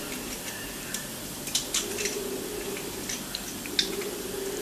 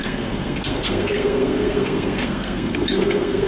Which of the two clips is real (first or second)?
first